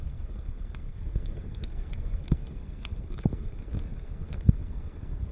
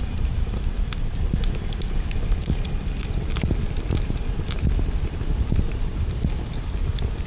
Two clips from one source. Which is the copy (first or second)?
first